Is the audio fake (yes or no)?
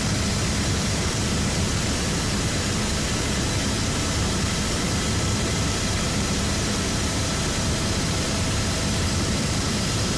yes